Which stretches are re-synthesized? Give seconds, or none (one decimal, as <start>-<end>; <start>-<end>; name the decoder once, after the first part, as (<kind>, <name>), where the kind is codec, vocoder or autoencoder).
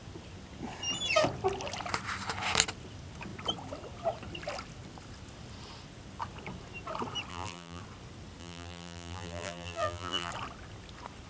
7.3-7.8 (vocoder, BigVGAN v2); 8.4-10.3